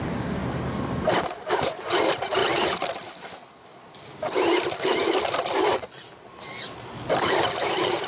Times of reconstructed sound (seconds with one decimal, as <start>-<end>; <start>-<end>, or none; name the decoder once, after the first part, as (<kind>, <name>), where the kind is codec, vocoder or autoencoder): 0.0-2.4 (vocoder, BigVGAN v2); 5.1-8.1